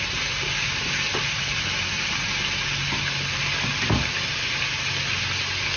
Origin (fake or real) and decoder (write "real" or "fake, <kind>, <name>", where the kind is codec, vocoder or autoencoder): real